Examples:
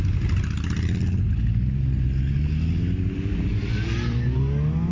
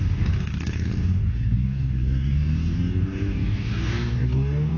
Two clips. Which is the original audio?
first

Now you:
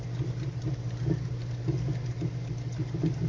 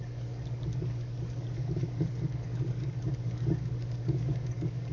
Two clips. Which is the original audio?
first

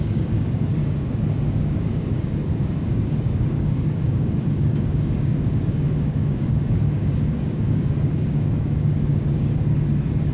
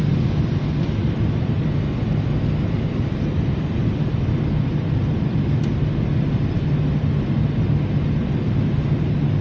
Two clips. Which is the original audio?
second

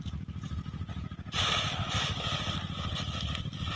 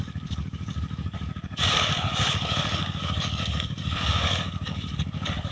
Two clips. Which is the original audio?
first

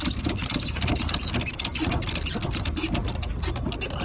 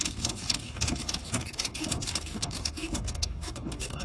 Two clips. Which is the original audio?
first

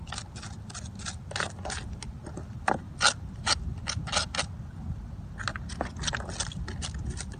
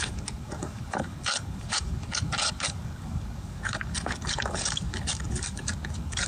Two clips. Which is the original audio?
first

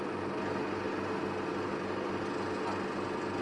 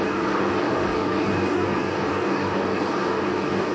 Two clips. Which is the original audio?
first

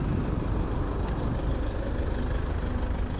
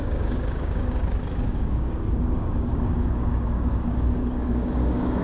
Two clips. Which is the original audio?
first